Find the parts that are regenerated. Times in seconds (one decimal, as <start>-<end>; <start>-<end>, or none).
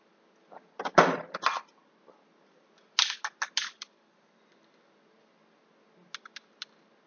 3.6-4.4